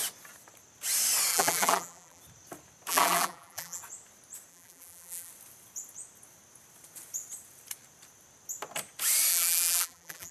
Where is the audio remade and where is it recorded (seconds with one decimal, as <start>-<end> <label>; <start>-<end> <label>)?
0.0-1.3 recorded; 1.3-2.2 remade; 2.2-2.9 recorded; 2.9-3.8 remade; 3.8-4.5 recorded; 4.5-5.3 remade; 5.3-9.3 recorded; 9.3-10.3 remade